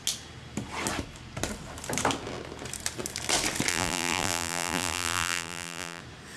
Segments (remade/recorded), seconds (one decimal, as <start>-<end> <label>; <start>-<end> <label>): 0.0-3.7 recorded; 3.7-6.0 remade; 6.0-6.4 recorded